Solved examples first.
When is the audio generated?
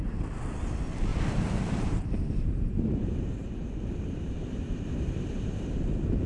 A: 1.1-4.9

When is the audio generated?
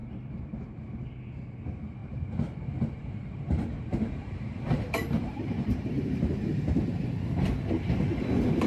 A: 0.0-0.8; 2.0-6.6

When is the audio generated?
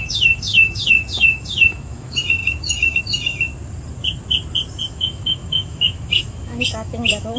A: 0.0-3.5; 4.9-7.4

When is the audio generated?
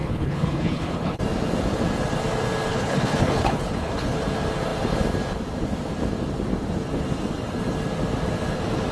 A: 0.0-1.2; 2.7-4.2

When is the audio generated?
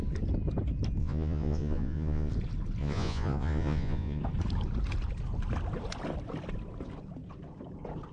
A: 1.0-2.3; 2.8-4.2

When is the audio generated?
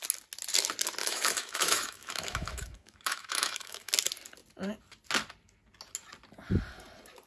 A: 1.0-3.9